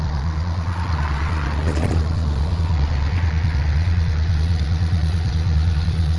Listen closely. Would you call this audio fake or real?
fake